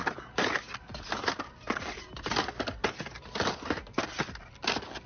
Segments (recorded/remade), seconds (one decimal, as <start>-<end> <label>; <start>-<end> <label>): 0.0-0.9 recorded; 0.9-4.0 remade; 4.0-5.1 recorded